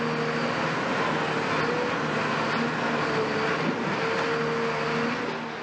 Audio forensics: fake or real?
real